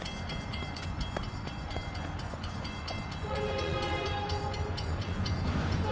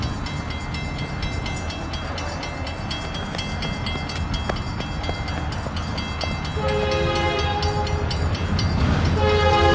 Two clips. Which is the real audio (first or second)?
second